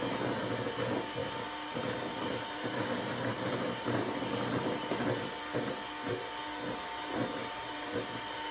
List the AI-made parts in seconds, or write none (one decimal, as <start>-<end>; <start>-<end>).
1.2-4.9; 7.4-7.9